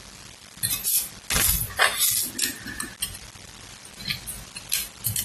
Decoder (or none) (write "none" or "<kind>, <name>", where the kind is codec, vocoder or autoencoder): none